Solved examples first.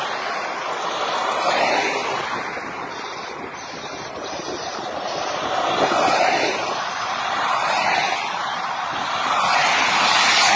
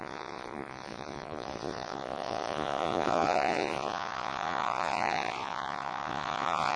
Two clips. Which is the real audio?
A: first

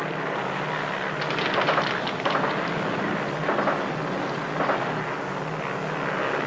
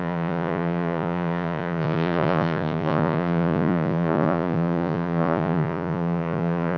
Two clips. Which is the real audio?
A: first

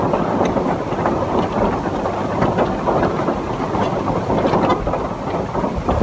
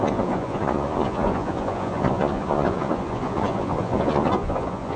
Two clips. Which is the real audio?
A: first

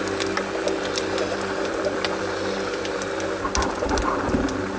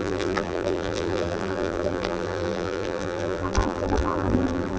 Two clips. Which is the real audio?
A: first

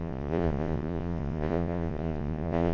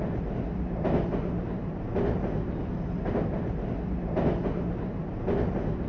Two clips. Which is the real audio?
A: second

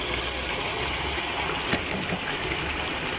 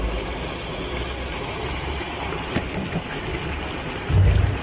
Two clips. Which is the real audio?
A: second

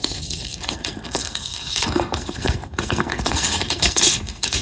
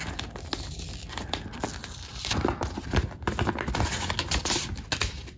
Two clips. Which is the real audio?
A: second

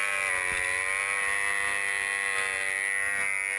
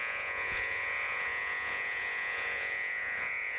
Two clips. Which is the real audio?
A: first